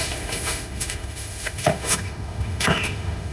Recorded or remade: remade